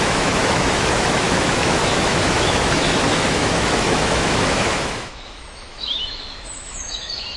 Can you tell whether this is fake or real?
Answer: fake